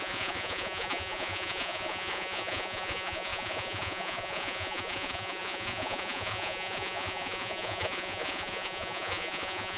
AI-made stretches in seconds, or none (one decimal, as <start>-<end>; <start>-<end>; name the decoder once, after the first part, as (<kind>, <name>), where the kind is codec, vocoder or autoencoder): 0.0-9.8 (vocoder, Vocos)